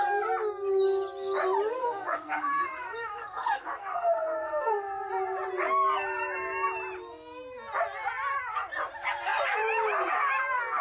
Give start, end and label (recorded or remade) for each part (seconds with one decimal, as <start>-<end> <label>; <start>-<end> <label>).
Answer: 0.0-1.8 recorded; 1.8-5.1 remade; 5.1-10.8 recorded